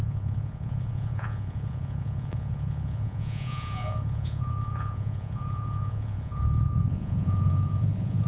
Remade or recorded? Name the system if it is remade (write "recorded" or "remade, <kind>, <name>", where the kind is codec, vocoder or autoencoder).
remade, vocoder, Vocos